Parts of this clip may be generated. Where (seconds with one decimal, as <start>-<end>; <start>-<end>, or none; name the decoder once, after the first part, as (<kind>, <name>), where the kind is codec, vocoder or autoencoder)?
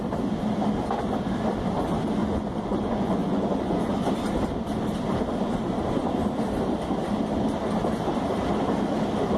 2.2-4.1 (vocoder, Vocos)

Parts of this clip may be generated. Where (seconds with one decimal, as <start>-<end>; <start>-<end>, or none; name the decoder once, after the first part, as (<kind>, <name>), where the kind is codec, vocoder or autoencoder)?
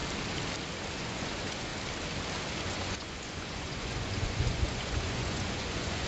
0.9-1.7 (vocoder, Vocos); 2.6-6.1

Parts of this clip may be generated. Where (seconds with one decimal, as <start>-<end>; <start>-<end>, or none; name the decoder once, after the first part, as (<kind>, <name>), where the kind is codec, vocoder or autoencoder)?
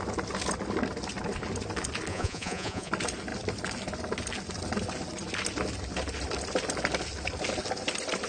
2.1-2.9 (vocoder, Vocos)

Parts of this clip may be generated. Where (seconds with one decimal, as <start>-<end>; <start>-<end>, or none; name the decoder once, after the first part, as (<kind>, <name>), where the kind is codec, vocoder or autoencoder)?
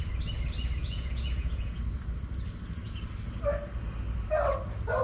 0.8-1.8 (vocoder, Vocos)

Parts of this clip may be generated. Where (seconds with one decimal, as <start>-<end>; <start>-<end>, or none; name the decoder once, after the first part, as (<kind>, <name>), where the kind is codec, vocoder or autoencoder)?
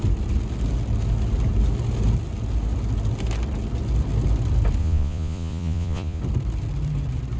4.8-6.2 (vocoder, Vocos)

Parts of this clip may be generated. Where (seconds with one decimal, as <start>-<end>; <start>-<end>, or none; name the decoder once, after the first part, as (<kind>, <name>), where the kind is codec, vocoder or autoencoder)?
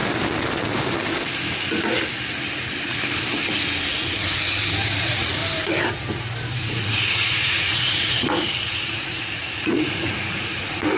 5.0-5.4 (vocoder, Vocos); 6.5-11.0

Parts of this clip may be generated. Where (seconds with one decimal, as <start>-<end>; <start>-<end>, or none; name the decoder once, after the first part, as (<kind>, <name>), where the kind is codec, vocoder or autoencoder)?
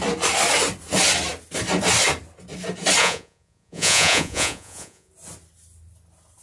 3.0-5.1 (vocoder, Vocos)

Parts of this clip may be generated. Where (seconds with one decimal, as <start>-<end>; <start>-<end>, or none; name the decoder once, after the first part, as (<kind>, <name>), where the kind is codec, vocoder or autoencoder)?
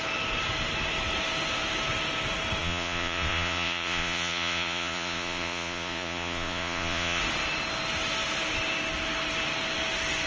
2.6-7.2 (vocoder, Vocos)